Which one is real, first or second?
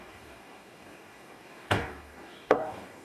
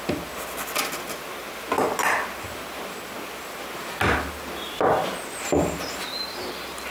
second